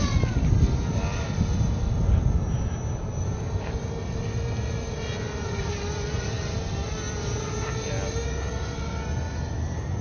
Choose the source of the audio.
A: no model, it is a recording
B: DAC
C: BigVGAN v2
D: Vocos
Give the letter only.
A